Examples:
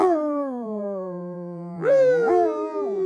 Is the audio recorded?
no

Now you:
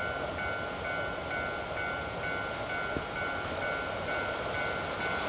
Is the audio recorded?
yes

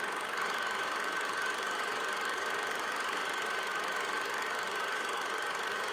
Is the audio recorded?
no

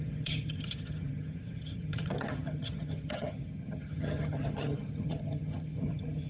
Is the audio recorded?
no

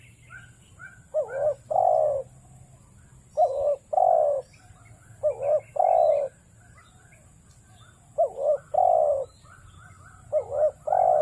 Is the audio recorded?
yes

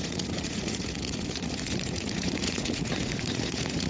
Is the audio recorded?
no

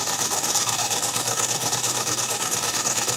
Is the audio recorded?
no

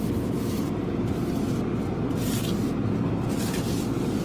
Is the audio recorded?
yes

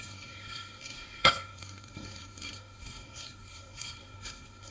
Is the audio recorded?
no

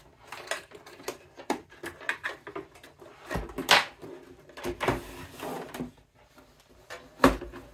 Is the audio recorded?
yes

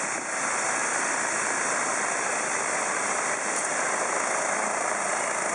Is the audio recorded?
no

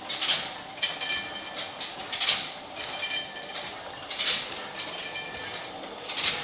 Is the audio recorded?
yes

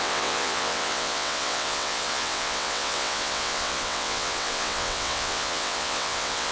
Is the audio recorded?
no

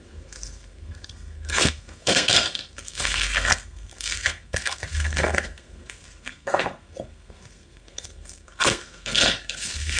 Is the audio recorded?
no